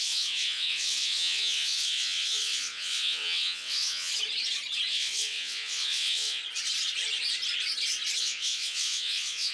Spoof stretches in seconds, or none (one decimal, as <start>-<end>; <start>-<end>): 0.0-4.1; 4.9-6.4; 8.2-9.5